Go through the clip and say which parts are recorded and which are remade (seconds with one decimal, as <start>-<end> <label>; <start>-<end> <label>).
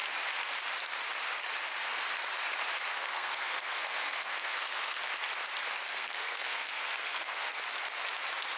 0.0-2.9 recorded; 2.9-5.1 remade; 5.1-5.9 recorded; 5.9-7.6 remade; 7.6-8.6 recorded